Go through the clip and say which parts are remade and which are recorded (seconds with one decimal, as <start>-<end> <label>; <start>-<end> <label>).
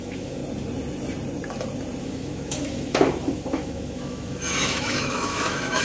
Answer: 0.0-0.4 remade; 0.4-2.0 recorded; 2.0-5.8 remade